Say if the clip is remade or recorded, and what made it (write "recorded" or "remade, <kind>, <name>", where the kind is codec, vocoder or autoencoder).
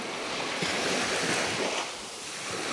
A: remade, vocoder, BigVGAN v2